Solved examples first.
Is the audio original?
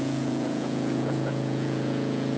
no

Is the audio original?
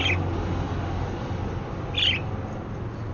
yes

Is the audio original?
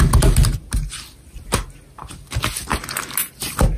yes